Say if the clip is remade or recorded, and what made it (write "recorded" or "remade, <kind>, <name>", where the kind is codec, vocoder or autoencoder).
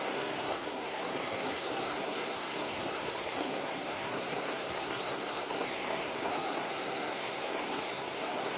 remade, codec, SNAC